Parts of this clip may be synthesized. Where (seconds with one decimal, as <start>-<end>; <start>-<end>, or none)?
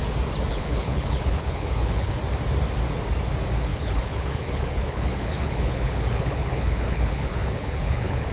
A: 0.5-2.2; 3.7-8.3